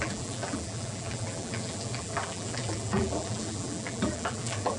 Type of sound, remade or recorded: remade